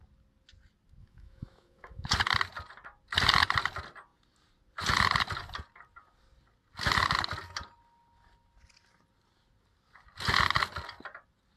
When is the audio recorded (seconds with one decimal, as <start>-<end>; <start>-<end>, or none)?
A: 0.0-1.0; 2.1-11.6